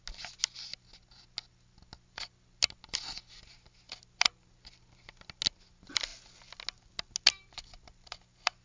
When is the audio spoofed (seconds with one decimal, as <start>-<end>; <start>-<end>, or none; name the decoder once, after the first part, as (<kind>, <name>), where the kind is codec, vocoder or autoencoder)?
none